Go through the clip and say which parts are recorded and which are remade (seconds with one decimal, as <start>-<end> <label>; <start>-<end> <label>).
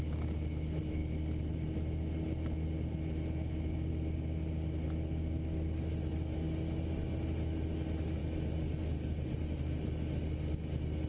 0.0-11.1 recorded